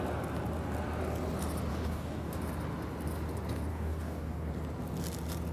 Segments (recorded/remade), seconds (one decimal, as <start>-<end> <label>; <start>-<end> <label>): 0.0-1.7 recorded; 1.7-2.4 remade; 2.4-3.7 recorded; 3.7-4.5 remade; 4.5-5.5 recorded